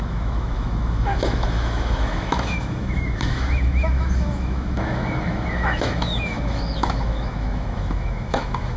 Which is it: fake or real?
fake